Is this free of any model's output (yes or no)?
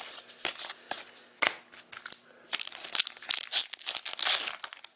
yes